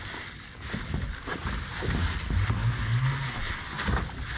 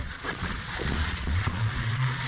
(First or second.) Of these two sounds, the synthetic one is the second